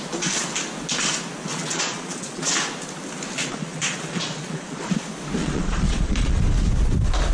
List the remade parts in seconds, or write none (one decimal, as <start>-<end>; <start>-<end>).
1.5-2.6; 3.4-4.9; 5.4-6.4